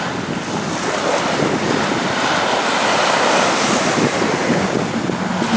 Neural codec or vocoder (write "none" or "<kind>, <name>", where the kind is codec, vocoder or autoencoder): none